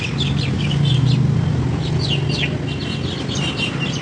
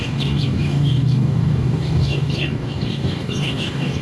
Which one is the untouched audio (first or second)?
first